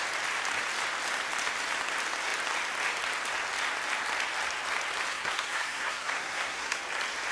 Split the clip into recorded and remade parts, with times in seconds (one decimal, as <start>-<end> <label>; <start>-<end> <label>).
0.0-5.1 recorded; 5.1-6.8 remade; 6.8-7.3 recorded